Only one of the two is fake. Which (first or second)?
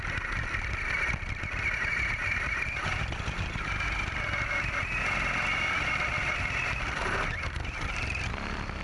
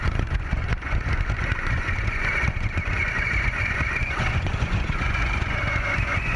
second